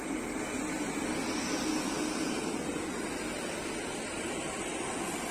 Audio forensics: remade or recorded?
recorded